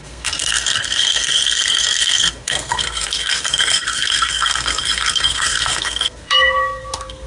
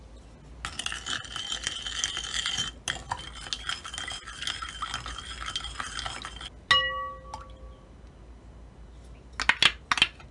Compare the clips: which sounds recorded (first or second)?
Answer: second